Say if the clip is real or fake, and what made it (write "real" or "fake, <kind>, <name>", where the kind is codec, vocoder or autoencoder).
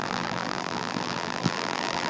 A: fake, vocoder, BigVGAN v2